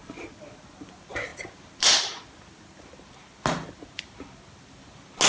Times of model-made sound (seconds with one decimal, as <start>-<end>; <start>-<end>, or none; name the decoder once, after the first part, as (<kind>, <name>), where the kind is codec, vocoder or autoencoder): none